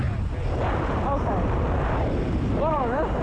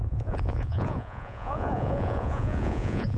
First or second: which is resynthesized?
second